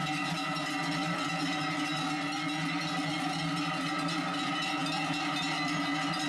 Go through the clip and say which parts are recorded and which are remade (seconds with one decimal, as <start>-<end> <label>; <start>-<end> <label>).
0.0-6.3 recorded